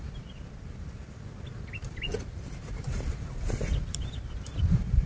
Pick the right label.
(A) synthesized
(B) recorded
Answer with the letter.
A